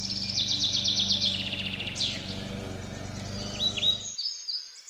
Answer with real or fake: real